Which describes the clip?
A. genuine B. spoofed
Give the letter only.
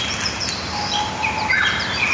A